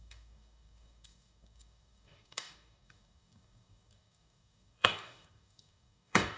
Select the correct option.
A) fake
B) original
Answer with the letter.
A